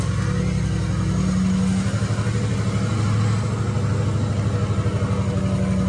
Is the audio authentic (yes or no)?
yes